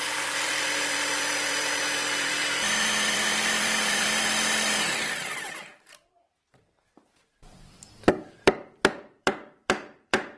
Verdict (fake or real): fake